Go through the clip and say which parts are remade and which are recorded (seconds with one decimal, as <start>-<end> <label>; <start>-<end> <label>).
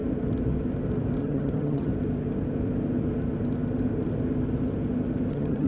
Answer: 0.0-1.2 recorded; 1.2-1.9 remade; 1.9-5.3 recorded; 5.3-5.7 remade